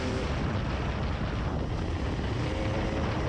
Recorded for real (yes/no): yes